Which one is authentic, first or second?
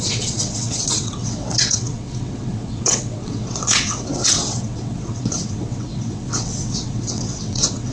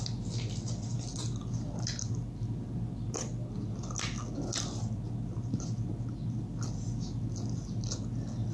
second